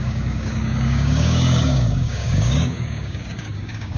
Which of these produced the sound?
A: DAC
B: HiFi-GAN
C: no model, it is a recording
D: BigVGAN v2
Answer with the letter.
A